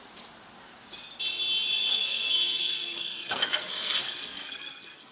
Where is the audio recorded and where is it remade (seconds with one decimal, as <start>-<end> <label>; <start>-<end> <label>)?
0.0-1.9 recorded; 1.9-5.1 remade